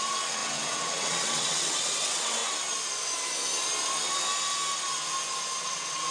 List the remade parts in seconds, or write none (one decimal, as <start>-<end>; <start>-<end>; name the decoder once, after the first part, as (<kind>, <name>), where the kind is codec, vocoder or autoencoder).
0.0-2.4 (vocoder, WaveNeXt); 5.6-6.1